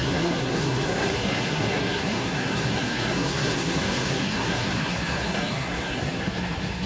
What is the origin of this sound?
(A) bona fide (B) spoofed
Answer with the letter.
B